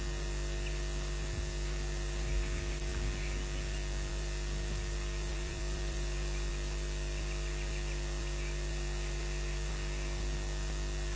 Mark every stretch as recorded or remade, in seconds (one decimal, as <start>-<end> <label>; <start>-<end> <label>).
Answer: 0.0-5.3 recorded; 5.3-6.5 remade; 6.5-11.2 recorded

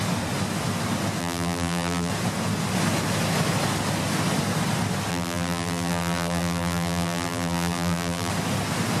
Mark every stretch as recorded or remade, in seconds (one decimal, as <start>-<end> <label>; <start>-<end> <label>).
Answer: 0.0-1.2 recorded; 1.2-2.1 remade; 2.1-5.1 recorded; 5.1-8.3 remade; 8.3-9.0 recorded

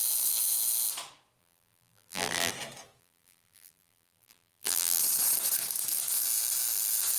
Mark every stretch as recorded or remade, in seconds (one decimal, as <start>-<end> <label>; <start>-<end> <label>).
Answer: 0.0-1.4 recorded; 1.4-2.5 remade; 2.5-3.0 recorded; 3.0-5.0 remade; 5.0-7.2 recorded

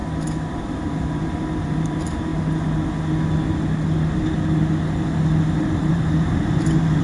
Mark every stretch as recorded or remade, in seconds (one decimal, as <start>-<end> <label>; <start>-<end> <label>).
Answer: 0.0-0.5 recorded; 0.5-2.3 remade; 2.3-5.9 recorded; 5.9-7.0 remade

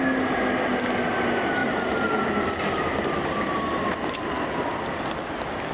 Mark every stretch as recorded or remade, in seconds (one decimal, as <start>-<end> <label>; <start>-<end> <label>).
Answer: 0.0-5.7 recorded

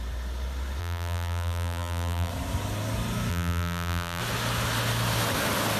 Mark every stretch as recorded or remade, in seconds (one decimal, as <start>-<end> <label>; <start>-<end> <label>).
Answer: 0.0-0.8 recorded; 0.8-2.3 remade; 2.3-3.3 recorded; 3.3-4.2 remade; 4.2-5.8 recorded

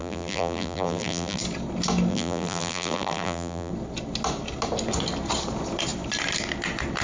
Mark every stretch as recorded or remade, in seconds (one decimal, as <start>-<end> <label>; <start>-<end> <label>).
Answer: 0.0-1.4 remade; 1.4-2.1 recorded; 2.1-3.7 remade; 3.7-7.0 recorded

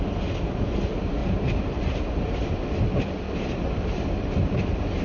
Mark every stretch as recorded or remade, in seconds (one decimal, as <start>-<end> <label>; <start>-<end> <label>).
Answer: 0.0-1.2 recorded; 1.2-2.5 remade; 2.5-5.0 recorded